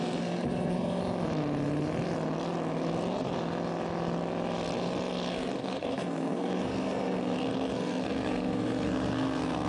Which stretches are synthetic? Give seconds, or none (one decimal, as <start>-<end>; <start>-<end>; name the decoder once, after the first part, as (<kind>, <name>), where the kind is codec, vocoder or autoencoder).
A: 0.0-1.0 (codec, SNAC); 5.3-9.7